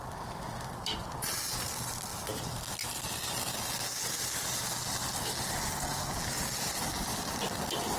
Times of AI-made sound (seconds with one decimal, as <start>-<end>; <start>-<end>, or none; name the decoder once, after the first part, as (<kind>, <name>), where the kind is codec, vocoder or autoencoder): none